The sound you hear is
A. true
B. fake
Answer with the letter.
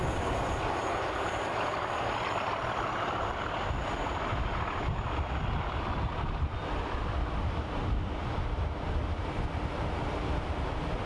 A